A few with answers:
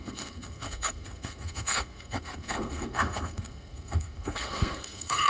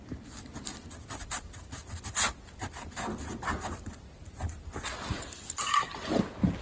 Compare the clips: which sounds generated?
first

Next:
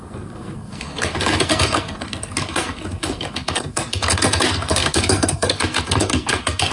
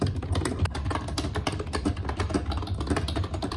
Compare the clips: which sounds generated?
first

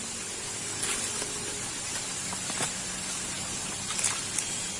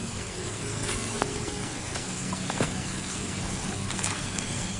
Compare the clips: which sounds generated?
second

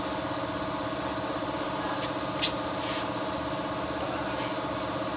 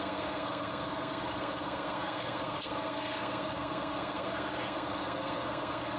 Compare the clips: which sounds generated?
second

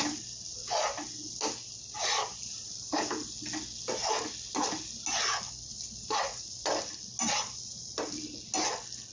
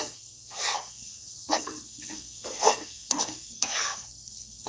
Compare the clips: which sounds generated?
second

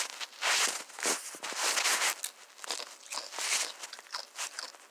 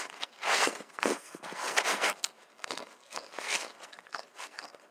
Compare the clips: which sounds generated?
second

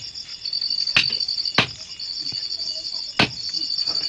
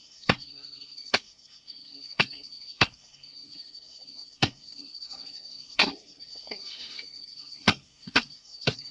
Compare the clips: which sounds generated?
second